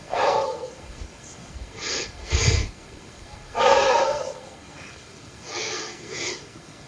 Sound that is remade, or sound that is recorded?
remade